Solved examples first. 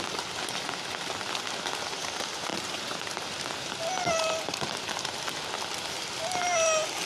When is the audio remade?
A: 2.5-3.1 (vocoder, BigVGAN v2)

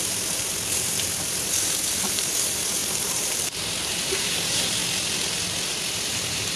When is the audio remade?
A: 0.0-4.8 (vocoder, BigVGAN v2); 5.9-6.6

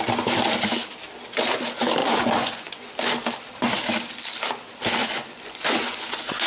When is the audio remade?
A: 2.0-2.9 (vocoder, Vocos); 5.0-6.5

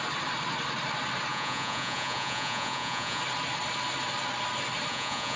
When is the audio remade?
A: 1.3-3.2 (vocoder, Vocos); 4.9-5.4

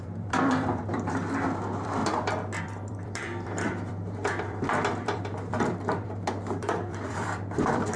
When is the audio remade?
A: 0.0-2.0 (vocoder, BigVGAN v2); 2.6-8.0

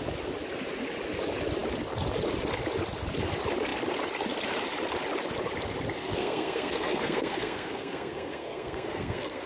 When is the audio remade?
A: 6.0-9.5 (codec, SNAC)

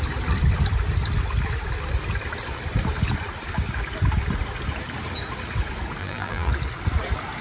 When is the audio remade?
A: 6.0-6.5 (vocoder, BigVGAN v2)

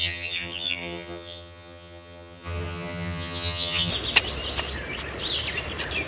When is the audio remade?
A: 0.0-3.9 (vocoder, HiFi-GAN)